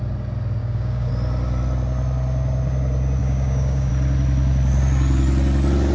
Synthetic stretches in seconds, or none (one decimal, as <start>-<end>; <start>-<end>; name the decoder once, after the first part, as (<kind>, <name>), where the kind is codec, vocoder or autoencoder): 0.6-1.1 (codec, DAC); 3.2-3.9